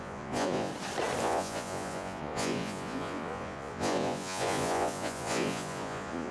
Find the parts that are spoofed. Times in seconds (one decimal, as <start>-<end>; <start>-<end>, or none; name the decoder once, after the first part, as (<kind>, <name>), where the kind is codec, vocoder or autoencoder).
0.0-0.7 (vocoder, Vocos); 1.2-6.3